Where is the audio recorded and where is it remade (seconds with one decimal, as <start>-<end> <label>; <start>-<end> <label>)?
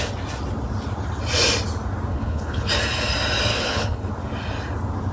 0.0-2.1 recorded; 2.1-2.7 remade; 2.7-3.5 recorded; 3.5-4.1 remade; 4.1-5.1 recorded